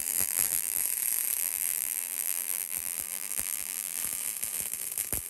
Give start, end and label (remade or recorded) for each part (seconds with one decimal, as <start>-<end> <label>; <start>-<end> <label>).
0.0-0.8 remade; 0.8-1.4 recorded; 1.4-4.0 remade; 4.0-5.3 recorded